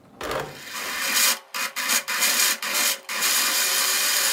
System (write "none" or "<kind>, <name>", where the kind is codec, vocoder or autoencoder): none